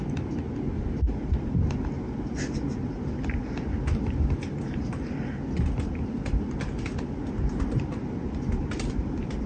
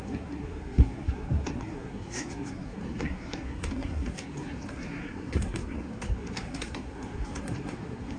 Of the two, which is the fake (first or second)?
second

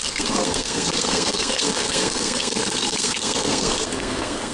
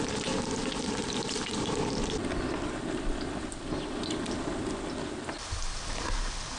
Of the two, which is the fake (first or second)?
first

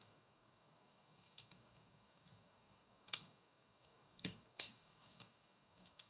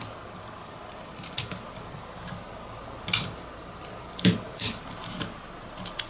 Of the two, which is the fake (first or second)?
first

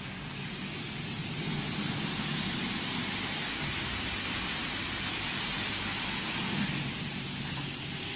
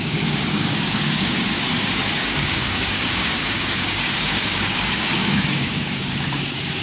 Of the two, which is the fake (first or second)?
second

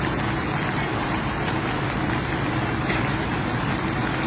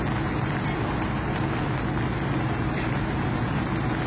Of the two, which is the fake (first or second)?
first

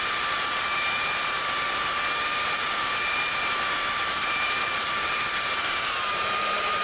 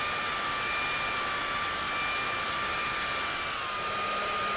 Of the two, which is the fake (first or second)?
first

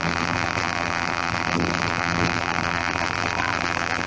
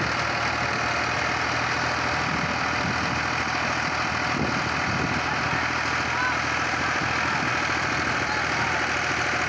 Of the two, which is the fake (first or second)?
first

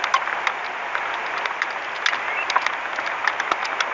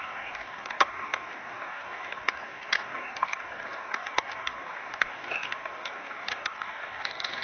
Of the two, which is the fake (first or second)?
second